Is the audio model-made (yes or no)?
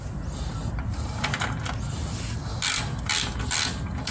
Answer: no